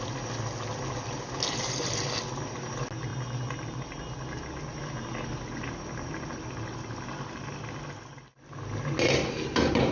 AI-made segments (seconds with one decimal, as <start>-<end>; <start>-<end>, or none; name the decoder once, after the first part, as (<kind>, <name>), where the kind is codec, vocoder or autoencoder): none